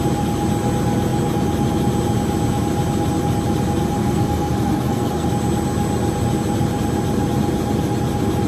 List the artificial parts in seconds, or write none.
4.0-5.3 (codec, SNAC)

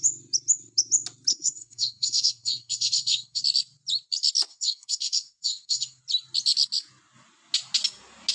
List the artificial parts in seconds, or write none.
1.3-3.4 (codec, SNAC); 4.5-6.0

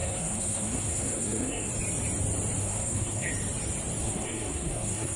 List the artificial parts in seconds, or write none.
0.0-1.7 (codec, SNAC); 2.6-3.3; 4.0-5.2

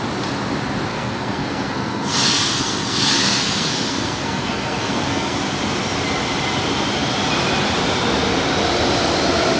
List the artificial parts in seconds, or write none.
0.9-5.4 (codec, SNAC)